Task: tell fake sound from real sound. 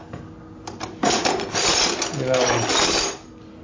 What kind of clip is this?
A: real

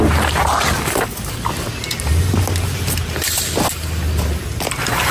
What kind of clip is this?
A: real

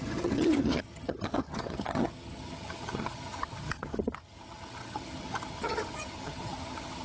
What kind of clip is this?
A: fake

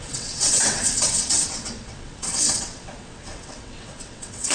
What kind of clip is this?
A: fake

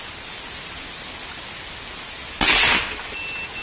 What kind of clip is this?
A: real